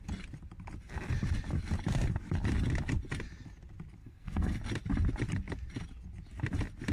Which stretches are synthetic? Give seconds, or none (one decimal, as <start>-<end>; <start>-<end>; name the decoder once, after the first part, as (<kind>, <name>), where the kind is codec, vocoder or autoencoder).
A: 4.0-4.6 (codec, SNAC)